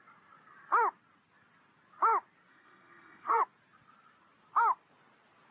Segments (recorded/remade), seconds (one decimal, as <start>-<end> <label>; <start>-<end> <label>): 0.0-2.5 recorded; 2.5-3.4 remade; 3.4-5.5 recorded